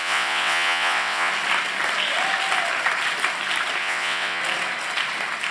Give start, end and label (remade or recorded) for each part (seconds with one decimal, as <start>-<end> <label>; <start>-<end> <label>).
0.0-1.3 remade; 1.3-3.8 recorded; 3.8-4.4 remade; 4.4-5.5 recorded